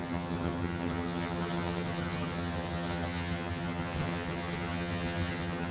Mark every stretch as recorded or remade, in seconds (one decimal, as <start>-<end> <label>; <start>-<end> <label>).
0.0-5.7 remade